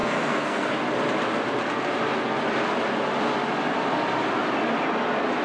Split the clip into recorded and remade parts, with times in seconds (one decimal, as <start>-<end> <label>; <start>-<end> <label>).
0.0-0.7 remade; 0.7-5.4 recorded